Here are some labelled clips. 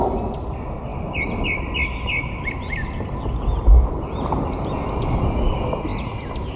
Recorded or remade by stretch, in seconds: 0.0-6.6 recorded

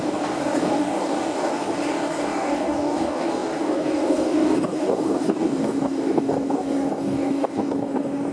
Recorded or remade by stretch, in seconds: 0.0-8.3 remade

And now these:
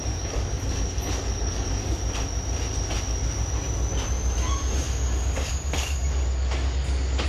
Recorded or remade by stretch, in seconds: 0.0-1.8 remade; 1.8-4.8 recorded; 4.8-7.3 remade